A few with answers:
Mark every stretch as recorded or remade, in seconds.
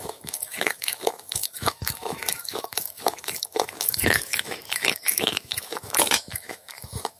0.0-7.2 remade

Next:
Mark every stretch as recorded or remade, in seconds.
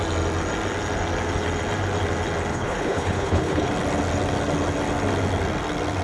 0.0-2.5 recorded; 2.5-3.7 remade; 3.7-6.0 recorded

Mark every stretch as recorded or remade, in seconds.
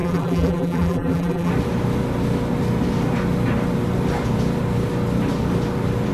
0.0-1.5 remade; 1.5-6.1 recorded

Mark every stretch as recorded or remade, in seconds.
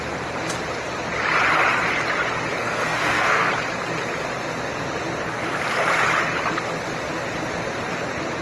0.0-2.6 recorded; 2.6-3.5 remade; 3.5-8.4 recorded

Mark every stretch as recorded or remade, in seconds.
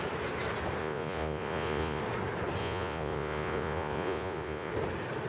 0.0-0.8 recorded; 0.8-2.0 remade; 2.0-2.6 recorded; 2.6-4.7 remade; 4.7-5.3 recorded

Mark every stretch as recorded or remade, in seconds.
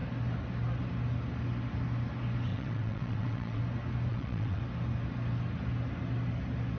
0.0-2.5 recorded; 2.5-3.6 remade; 3.6-4.1 recorded; 4.1-4.6 remade; 4.6-6.8 recorded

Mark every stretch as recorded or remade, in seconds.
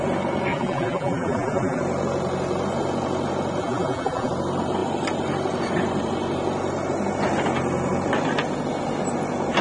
0.0-0.5 recorded; 0.5-1.8 remade; 1.8-3.6 recorded; 3.6-4.3 remade; 4.3-9.6 recorded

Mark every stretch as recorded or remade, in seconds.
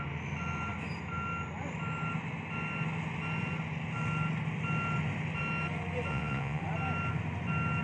0.0-6.1 recorded; 6.1-6.6 remade; 6.6-7.8 recorded